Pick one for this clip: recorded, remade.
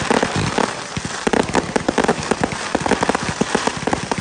remade